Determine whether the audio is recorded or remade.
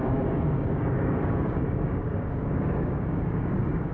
remade